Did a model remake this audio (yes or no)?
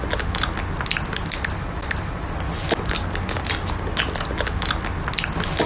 no